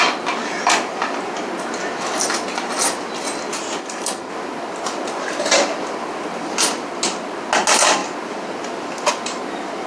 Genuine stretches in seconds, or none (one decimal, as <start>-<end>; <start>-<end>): 0.0-3.8; 4.3-9.9